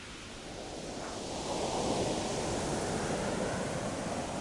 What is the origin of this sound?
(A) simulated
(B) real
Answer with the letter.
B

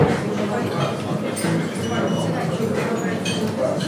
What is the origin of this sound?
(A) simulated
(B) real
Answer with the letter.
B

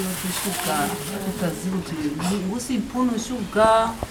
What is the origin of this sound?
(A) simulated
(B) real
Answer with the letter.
B